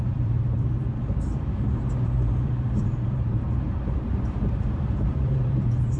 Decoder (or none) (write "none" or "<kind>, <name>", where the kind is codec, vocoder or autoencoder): vocoder, BigVGAN v2